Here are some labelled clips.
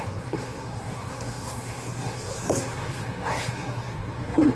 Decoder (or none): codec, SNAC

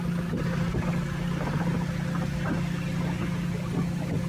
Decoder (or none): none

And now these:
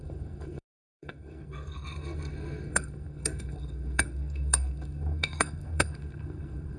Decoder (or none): codec, SNAC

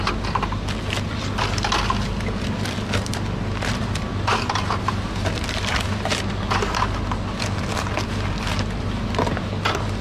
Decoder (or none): none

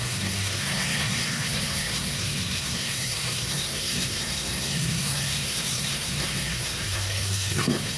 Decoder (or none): codec, SNAC